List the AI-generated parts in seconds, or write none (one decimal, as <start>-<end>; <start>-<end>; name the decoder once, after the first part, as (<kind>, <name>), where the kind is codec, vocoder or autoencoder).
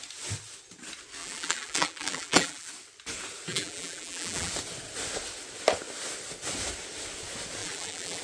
1.2-2.7 (vocoder, BigVGAN v2); 3.5-4.5; 7.6-8.2